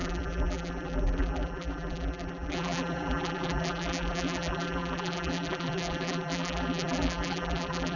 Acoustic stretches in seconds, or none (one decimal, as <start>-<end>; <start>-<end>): none